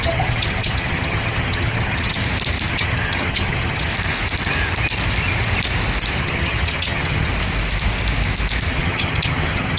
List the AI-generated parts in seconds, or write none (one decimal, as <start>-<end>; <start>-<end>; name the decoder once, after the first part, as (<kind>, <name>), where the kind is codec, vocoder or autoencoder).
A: 0.0-2.2 (vocoder, HiFi-GAN); 2.7-3.9; 6.2-7.3; 8.7-9.8